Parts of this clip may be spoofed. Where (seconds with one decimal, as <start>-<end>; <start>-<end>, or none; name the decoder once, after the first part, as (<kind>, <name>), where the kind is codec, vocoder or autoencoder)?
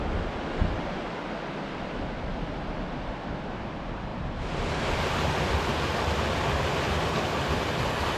none